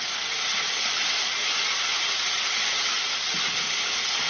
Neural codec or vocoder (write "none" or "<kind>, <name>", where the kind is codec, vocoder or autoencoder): none